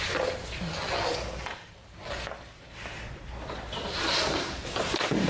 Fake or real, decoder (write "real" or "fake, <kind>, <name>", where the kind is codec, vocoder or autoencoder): real